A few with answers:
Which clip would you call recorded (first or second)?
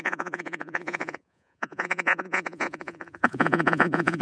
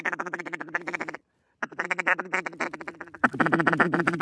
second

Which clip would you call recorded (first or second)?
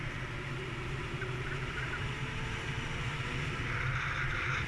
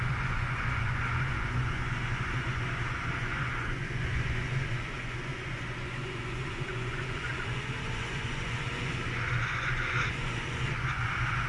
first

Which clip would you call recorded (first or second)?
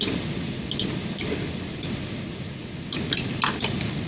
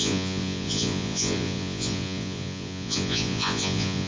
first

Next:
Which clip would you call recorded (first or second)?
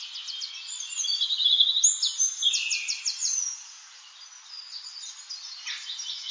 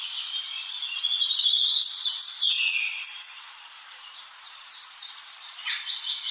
first